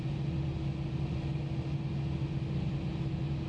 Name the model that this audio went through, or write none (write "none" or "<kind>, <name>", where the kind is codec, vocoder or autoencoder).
none